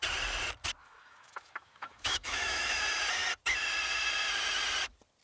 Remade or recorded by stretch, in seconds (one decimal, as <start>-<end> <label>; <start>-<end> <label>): 0.0-0.8 recorded; 0.8-2.8 remade; 2.8-5.2 recorded